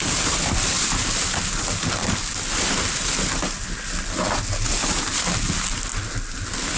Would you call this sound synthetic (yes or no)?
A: no